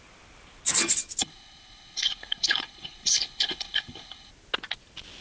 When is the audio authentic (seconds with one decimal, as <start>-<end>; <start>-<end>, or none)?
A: 0.0-1.2; 4.3-5.2